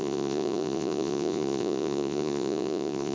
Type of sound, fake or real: fake